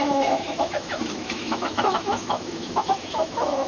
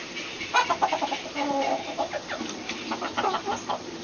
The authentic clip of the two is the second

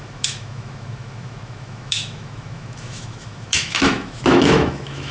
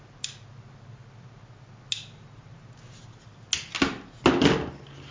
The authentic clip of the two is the second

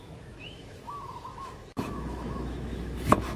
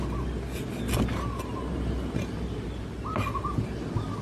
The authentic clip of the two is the second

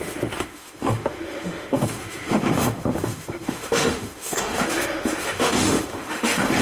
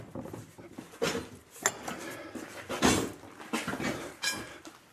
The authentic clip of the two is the second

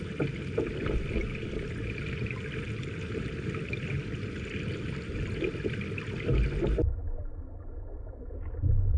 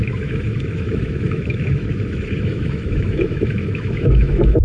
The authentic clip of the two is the first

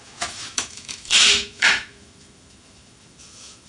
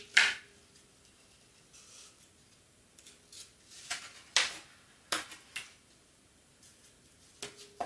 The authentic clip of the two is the second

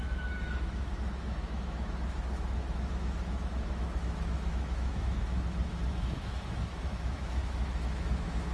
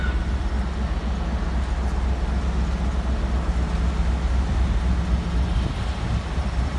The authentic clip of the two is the second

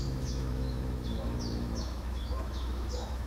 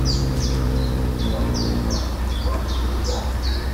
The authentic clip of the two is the second